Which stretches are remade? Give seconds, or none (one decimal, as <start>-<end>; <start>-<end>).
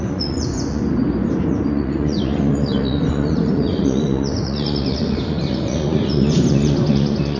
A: 0.0-0.8; 1.5-7.4